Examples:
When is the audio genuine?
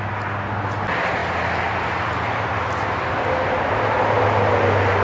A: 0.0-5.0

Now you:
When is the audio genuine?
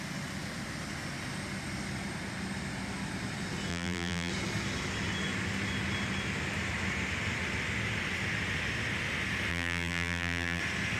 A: 0.0-3.7; 4.3-9.5; 10.6-11.0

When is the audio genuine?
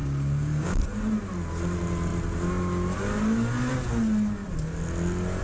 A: 0.8-5.4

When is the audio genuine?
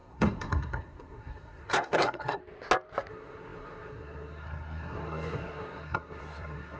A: 2.4-3.1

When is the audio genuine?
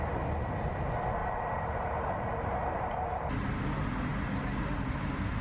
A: 0.0-1.2; 2.6-5.4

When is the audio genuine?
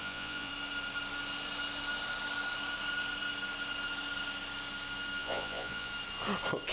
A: 0.5-5.2; 5.9-6.7